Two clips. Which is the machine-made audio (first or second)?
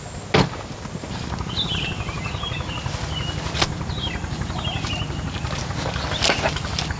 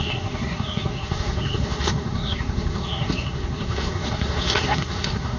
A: second